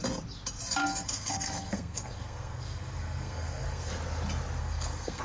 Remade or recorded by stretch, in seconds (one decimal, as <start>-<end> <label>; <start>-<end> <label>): 0.0-0.8 recorded; 0.8-3.9 remade; 3.9-4.6 recorded; 4.6-5.2 remade